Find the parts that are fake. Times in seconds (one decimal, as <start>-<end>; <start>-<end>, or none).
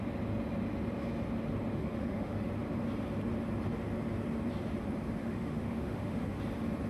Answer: 1.8-2.5; 5.2-6.4